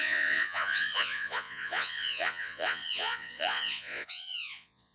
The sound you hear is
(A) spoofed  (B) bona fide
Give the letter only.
A